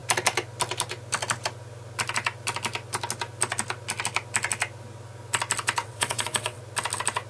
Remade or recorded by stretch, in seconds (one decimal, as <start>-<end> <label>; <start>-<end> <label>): 0.0-5.8 recorded; 5.8-6.6 remade; 6.6-7.3 recorded